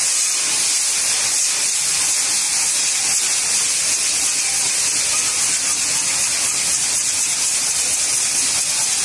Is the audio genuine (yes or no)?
yes